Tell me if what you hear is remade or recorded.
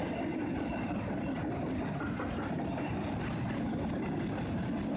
recorded